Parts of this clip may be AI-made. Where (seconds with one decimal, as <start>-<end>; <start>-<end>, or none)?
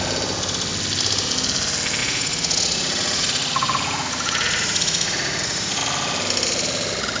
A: 2.0-5.8